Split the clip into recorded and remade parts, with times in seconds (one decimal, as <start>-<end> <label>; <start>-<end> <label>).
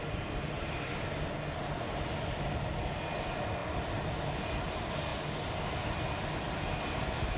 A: 0.0-7.4 recorded